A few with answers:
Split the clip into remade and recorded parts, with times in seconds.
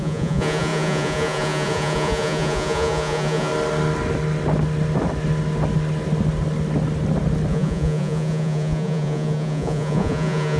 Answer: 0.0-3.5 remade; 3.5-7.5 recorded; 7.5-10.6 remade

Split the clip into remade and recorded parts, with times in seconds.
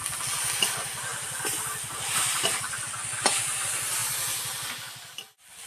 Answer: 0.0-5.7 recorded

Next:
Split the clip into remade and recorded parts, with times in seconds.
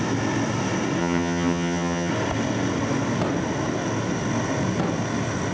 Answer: 0.0-1.0 recorded; 1.0-2.1 remade; 2.1-5.5 recorded